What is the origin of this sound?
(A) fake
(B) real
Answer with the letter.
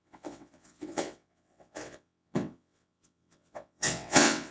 A